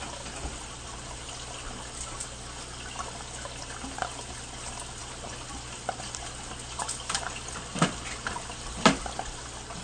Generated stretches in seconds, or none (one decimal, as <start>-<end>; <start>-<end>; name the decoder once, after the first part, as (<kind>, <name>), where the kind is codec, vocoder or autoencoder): none

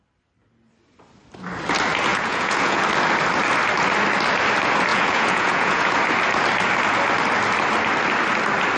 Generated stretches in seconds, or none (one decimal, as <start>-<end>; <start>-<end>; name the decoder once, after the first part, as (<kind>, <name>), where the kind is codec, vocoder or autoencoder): 2.1-2.8 (vocoder, Vocos); 4.9-5.9

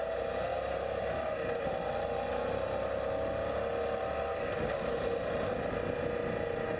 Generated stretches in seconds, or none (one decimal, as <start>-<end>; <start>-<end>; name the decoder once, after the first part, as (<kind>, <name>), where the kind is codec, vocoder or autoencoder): none

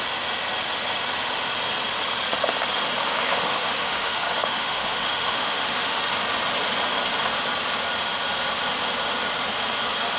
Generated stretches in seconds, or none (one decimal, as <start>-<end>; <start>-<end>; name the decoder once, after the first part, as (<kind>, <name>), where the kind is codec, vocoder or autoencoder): 3.0-6.0 (autoencoder, DAC-VAE)